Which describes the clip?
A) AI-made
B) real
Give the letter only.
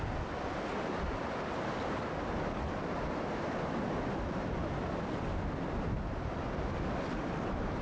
B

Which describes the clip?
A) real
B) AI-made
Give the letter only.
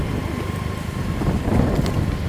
A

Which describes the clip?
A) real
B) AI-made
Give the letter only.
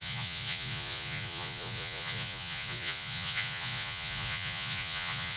B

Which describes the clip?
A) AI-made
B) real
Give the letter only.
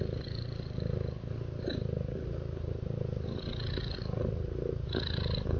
B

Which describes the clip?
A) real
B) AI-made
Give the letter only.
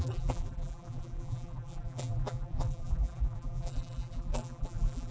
B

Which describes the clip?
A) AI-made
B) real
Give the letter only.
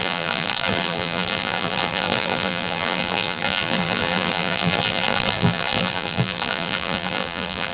A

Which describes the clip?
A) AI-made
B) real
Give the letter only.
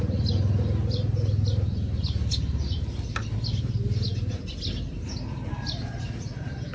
B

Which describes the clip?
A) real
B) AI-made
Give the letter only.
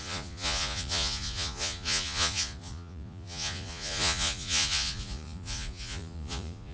B